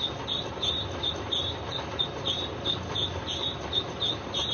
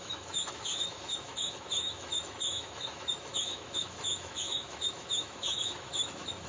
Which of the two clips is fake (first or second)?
second